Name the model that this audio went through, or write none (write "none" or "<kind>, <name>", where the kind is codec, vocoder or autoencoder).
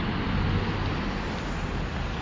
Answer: none